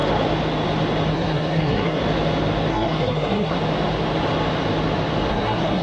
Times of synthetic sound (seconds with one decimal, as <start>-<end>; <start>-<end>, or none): 1.1-2.0; 2.7-3.6; 5.3-5.8